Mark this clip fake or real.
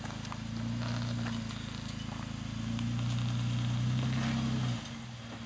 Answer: real